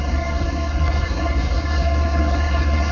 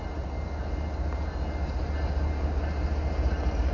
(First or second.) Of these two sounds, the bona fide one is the second